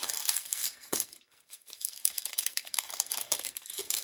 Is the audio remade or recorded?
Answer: remade